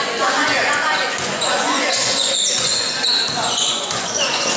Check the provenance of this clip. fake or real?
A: fake